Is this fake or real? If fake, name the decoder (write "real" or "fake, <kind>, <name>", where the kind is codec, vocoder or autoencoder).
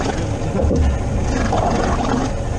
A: real